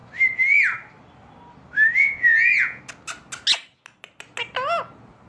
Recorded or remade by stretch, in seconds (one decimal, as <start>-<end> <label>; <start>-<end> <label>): 0.0-2.0 recorded; 2.0-2.8 remade; 2.8-5.3 recorded